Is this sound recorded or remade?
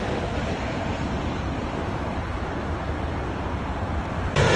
remade